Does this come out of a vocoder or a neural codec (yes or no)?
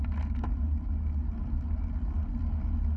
no